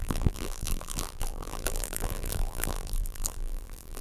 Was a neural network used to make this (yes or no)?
yes